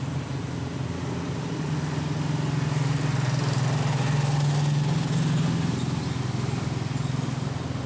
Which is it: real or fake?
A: real